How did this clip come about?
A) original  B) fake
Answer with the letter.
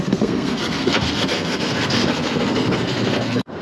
B